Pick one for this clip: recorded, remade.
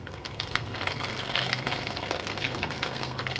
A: remade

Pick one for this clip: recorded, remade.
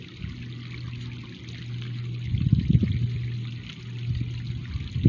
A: recorded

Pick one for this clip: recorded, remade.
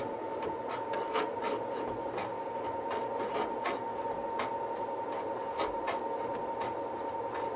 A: recorded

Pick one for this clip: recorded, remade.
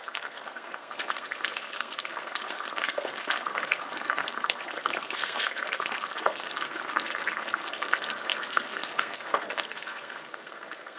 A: remade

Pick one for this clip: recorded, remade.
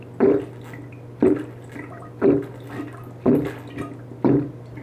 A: recorded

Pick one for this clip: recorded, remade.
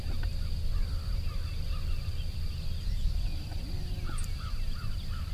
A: recorded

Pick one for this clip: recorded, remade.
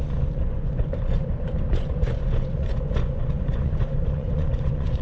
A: remade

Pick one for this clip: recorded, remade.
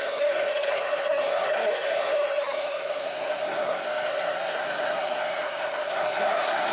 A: remade